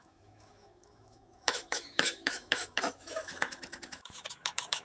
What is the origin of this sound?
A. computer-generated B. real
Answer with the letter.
A